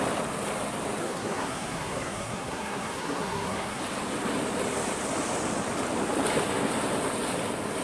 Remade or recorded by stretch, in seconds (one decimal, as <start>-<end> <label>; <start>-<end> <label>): 0.0-1.0 recorded; 1.0-3.8 remade; 3.8-7.8 recorded